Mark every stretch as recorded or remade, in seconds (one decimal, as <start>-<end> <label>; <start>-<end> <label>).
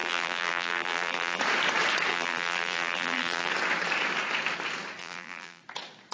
0.0-1.4 remade; 1.4-2.1 recorded; 2.1-3.5 remade; 3.5-5.0 recorded; 5.0-5.6 remade; 5.6-6.1 recorded